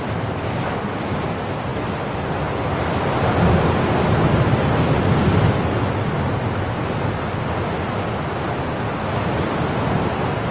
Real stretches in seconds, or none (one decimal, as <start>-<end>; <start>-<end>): 0.0-10.5